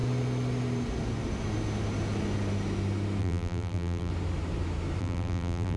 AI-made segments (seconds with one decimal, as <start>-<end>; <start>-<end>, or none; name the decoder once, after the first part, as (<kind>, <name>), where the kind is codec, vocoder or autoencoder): 3.2-4.1 (vocoder, BigVGAN v2); 5.0-5.8

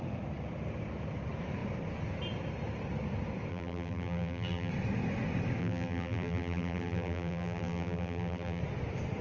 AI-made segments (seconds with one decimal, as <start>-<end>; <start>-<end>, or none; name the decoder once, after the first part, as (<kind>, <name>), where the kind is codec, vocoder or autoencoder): 3.5-4.7 (vocoder, BigVGAN v2); 5.6-8.6

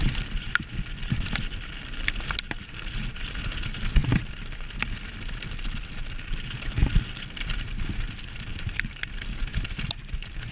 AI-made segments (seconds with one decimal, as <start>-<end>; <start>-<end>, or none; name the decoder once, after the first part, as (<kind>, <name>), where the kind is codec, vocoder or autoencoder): 6.8-7.5 (vocoder, BigVGAN v2); 8.5-9.3

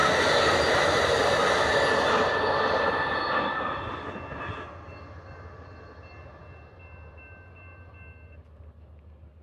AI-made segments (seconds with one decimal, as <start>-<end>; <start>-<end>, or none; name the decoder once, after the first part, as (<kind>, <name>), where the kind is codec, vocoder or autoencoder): none

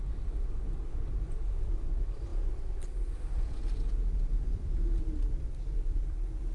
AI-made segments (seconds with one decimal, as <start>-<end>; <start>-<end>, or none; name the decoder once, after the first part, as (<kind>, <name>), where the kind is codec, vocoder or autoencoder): 0.0-6.5 (vocoder, BigVGAN v2)